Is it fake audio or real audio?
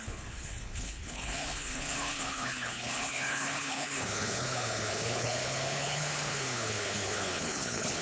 fake